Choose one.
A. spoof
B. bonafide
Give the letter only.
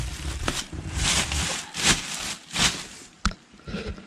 B